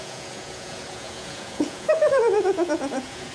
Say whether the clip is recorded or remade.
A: remade